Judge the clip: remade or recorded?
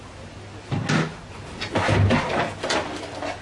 recorded